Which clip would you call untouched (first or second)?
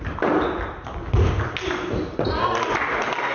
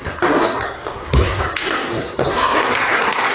first